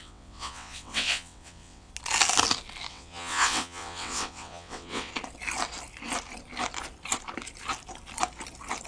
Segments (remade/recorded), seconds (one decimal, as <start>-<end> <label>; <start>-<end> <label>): 0.0-1.9 remade; 1.9-2.9 recorded; 2.9-5.1 remade; 5.1-8.9 recorded